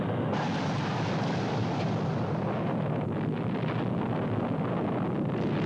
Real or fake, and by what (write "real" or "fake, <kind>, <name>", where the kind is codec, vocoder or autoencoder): real